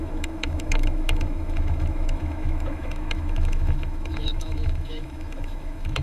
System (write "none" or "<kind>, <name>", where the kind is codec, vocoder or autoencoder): autoencoder, DAC-VAE